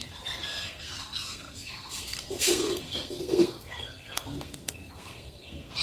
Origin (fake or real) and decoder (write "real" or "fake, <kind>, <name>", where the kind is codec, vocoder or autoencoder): fake, codec, SNAC